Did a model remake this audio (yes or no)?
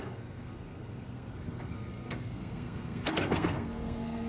yes